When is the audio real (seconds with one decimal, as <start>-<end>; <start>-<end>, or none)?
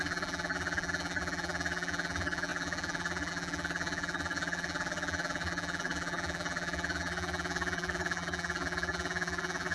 none